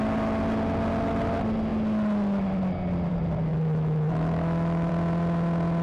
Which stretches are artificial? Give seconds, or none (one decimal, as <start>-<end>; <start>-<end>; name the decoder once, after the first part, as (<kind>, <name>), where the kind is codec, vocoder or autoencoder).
3.5-4.9 (autoencoder, DAC-VAE)